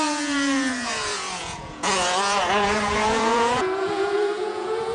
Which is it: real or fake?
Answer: fake